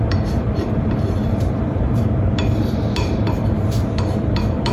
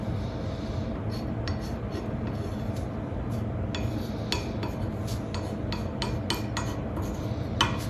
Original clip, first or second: second